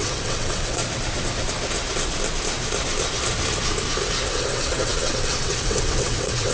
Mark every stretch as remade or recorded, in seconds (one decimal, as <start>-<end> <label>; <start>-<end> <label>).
0.0-0.8 remade; 0.8-4.3 recorded; 4.3-6.5 remade